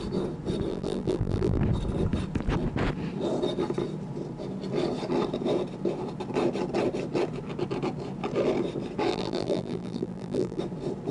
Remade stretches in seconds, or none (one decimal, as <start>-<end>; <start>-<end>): 0.7-1.6; 9.1-10.6